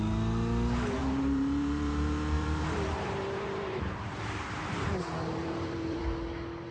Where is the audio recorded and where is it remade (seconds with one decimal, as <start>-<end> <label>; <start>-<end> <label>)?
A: 0.0-1.0 recorded; 1.0-5.0 remade; 5.0-5.4 recorded; 5.4-6.0 remade; 6.0-6.7 recorded

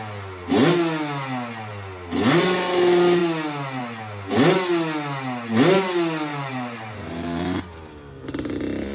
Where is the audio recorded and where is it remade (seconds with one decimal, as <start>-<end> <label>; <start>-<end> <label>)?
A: 0.0-6.3 recorded; 6.3-7.6 remade; 7.6-8.9 recorded

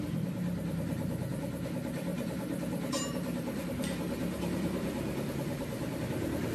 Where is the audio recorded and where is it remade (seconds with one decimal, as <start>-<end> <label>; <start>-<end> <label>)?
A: 0.0-2.1 recorded; 2.1-6.0 remade; 6.0-6.5 recorded

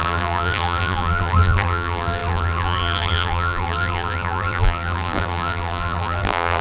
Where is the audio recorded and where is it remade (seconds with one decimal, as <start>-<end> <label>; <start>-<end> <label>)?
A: 0.0-6.6 remade

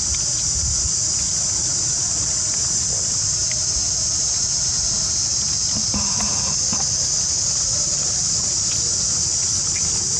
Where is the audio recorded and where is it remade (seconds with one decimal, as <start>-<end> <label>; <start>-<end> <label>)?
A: 0.0-10.2 recorded

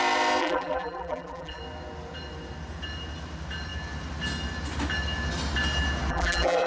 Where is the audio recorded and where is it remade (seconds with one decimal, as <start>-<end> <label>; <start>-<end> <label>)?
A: 0.0-0.4 recorded; 0.4-1.6 remade; 1.6-6.1 recorded; 6.1-6.7 remade

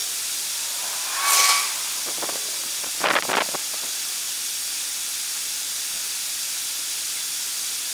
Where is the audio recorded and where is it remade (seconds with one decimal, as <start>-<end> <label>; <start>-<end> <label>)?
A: 0.0-7.9 recorded

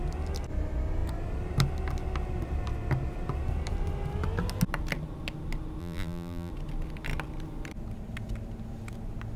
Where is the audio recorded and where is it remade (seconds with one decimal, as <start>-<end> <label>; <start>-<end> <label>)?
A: 0.0-5.8 recorded; 5.8-6.5 remade; 6.5-9.4 recorded